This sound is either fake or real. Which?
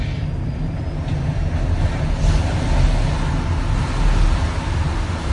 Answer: real